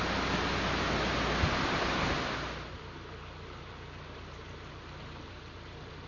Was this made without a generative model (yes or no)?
yes